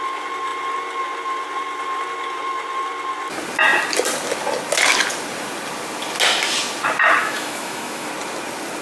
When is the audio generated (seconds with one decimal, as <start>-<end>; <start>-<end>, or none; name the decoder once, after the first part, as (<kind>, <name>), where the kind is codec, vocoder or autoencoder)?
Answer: 7.2-8.1 (autoencoder, DAC-VAE)